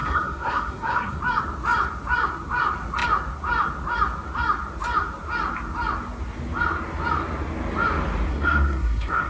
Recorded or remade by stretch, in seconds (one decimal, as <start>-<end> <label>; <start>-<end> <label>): 0.0-1.2 remade; 1.2-8.3 recorded; 8.3-9.3 remade